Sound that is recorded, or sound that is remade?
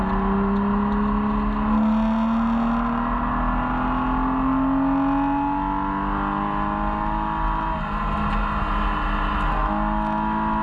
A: recorded